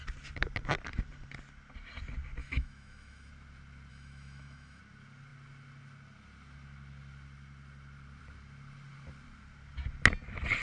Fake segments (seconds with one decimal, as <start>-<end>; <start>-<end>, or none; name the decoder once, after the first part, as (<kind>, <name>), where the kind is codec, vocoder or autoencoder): 2.4-3.3 (autoencoder, DAC-VAE); 3.9-4.8

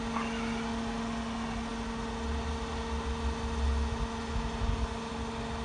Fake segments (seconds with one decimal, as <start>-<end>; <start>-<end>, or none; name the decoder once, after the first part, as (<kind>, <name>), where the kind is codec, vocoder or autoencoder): none

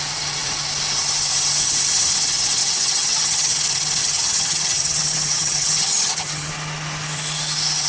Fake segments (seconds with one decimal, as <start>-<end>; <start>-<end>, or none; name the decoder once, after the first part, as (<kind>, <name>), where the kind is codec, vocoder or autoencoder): 2.6-3.5 (vocoder, HiFi-GAN); 4.0-6.5

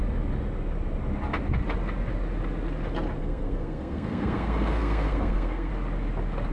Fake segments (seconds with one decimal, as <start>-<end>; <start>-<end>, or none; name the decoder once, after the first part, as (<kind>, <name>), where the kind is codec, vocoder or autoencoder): 3.2-5.7 (codec, SNAC)

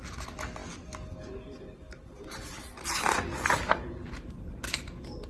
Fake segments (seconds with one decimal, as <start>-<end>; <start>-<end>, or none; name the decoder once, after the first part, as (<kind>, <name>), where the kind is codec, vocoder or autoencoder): none